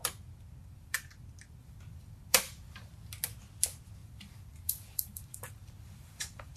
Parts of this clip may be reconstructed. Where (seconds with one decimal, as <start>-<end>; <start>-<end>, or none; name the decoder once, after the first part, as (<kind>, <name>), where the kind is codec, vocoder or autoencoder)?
0.6-1.2 (vocoder, BigVGAN v2); 1.6-2.9; 4.0-6.6